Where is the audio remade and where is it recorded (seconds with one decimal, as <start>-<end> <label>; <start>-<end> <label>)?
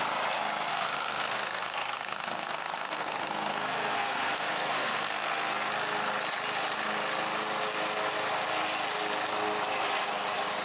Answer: 0.0-0.7 recorded; 0.7-5.7 remade; 5.7-10.6 recorded